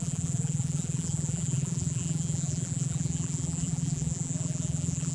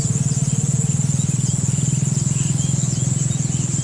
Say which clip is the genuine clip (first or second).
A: second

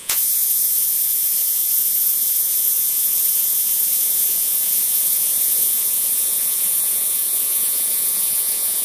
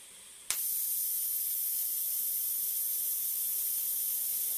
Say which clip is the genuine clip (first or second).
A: second